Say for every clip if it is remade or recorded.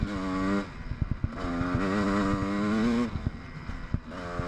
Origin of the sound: recorded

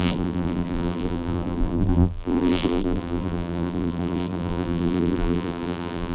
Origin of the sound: remade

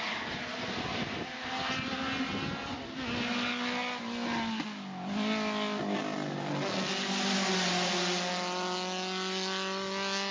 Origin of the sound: recorded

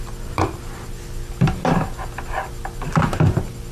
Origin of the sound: recorded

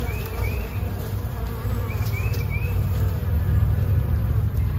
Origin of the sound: remade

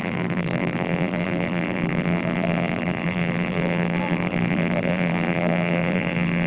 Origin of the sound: remade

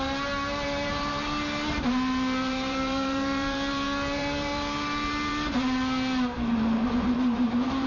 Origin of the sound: remade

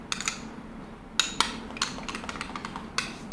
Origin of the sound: recorded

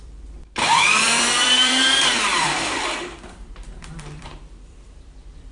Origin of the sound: remade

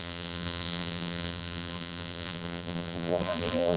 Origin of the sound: remade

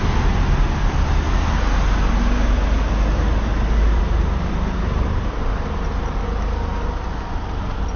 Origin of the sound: recorded